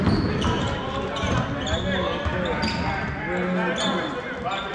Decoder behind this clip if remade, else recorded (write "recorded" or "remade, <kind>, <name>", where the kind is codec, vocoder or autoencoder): recorded